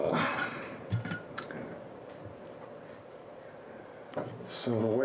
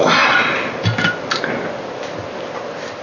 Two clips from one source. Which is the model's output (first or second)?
first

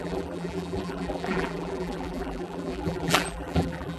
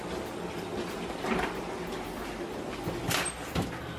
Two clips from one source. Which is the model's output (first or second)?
first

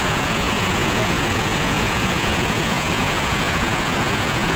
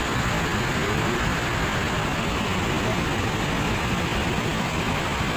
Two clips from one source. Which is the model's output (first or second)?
first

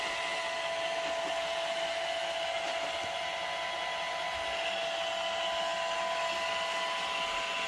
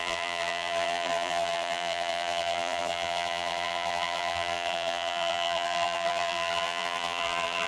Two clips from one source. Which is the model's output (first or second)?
second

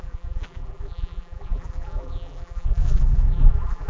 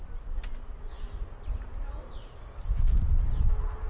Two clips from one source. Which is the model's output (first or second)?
first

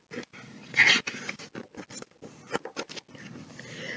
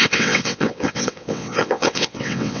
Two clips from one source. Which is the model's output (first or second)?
second